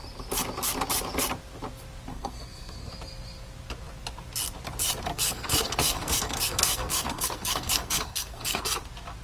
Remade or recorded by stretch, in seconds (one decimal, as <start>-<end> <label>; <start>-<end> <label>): 0.0-2.1 recorded; 2.1-2.9 remade; 2.9-5.1 recorded; 5.1-8.6 remade; 8.6-9.2 recorded